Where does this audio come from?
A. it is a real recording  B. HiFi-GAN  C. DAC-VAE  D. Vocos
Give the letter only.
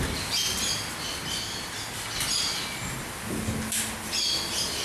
A